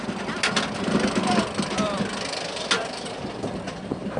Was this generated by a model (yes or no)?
no